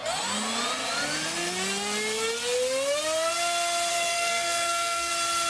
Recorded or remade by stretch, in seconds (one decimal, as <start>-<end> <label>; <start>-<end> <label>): 0.0-3.9 recorded; 3.9-5.1 remade; 5.1-5.5 recorded